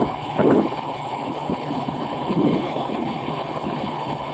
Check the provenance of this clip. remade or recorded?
remade